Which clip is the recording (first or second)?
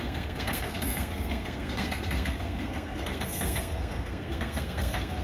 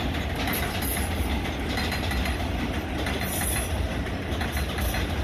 second